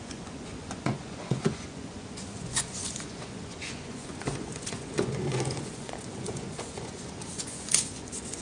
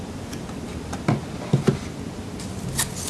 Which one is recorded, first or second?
second